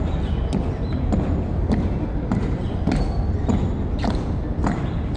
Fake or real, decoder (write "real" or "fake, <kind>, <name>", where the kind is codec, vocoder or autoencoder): real